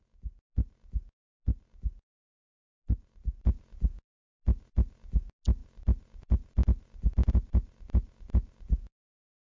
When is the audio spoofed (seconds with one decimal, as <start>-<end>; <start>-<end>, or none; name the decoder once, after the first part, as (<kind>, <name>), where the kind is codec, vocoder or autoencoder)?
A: none